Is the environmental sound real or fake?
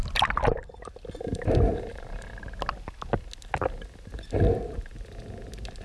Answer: real